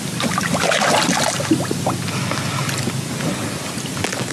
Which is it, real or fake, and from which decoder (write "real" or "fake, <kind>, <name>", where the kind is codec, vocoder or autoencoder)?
real